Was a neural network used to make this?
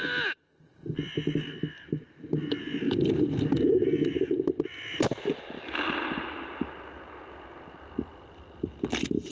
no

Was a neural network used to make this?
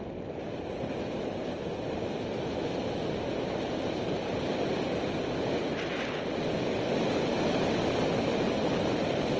no